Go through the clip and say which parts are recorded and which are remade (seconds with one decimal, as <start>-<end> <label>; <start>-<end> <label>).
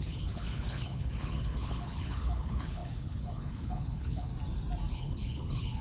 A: 0.0-4.3 remade; 4.3-4.9 recorded; 4.9-5.8 remade